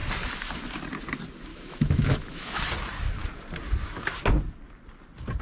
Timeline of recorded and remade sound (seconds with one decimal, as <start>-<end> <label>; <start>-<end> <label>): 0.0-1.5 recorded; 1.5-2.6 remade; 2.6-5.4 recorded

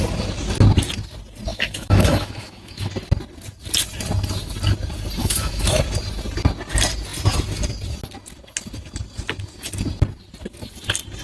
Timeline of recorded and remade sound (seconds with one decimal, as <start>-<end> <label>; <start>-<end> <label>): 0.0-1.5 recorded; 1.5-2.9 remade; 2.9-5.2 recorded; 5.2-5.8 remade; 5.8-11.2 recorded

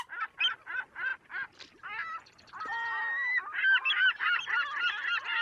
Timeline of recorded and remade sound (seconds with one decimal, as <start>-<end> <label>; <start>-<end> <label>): 0.0-5.4 recorded